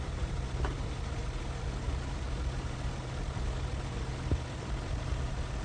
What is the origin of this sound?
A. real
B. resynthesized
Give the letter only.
A